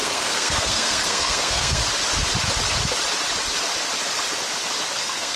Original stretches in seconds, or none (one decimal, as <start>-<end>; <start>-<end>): 1.8-5.0